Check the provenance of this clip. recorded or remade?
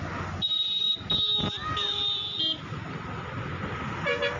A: recorded